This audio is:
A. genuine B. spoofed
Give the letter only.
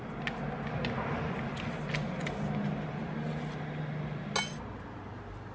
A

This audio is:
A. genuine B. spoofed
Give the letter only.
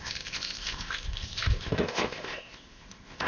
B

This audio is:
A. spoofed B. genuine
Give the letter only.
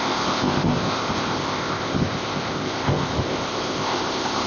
A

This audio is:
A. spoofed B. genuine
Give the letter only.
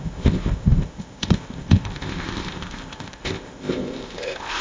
A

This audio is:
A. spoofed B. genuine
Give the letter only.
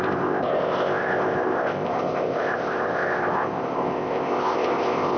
A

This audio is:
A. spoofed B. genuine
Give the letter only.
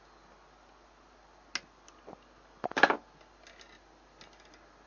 B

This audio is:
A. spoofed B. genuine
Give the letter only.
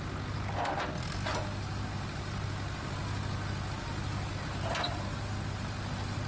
B